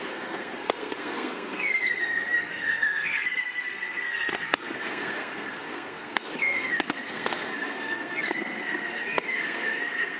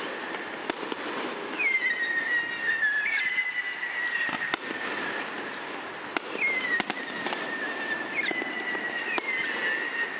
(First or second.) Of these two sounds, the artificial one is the first